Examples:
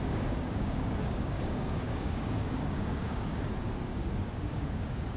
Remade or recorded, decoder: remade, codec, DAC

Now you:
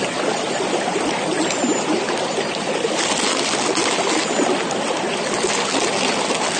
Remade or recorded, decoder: recorded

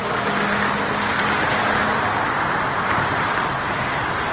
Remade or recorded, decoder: recorded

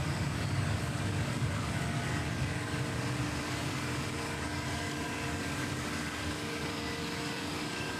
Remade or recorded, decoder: remade, codec, DAC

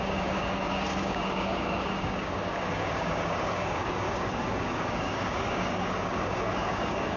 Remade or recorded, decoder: remade, codec, DAC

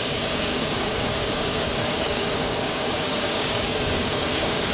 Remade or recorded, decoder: remade, codec, DAC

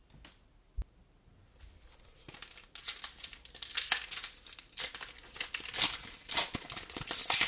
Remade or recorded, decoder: recorded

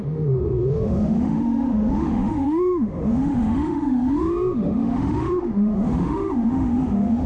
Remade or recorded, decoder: remade, autoencoder, DAC-VAE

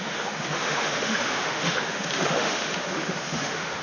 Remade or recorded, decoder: remade, autoencoder, DAC-VAE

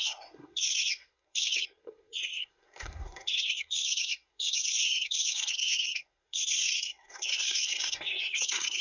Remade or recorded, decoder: remade, codec, SNAC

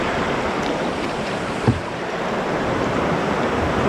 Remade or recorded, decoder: remade, vocoder, BigVGAN v2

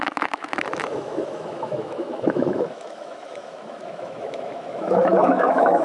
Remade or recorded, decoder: remade, autoencoder, DAC-VAE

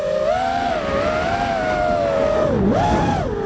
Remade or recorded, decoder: recorded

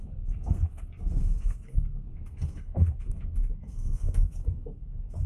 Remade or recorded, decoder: remade, codec, SNAC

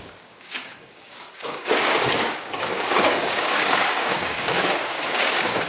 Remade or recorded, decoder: remade, codec, DAC